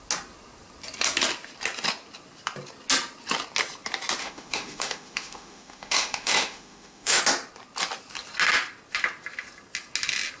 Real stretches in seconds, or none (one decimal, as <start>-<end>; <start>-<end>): 0.0-4.2; 7.2-10.4